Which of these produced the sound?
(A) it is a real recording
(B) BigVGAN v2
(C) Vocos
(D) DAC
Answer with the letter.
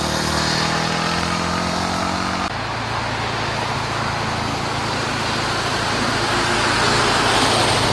A